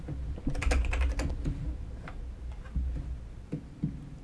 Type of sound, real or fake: real